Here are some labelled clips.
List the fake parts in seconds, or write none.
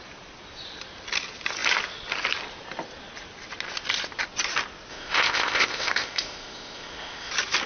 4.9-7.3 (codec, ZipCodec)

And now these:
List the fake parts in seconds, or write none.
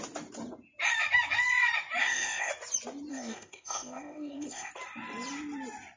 2.0-2.5 (codec, ZipCodec); 3.1-4.7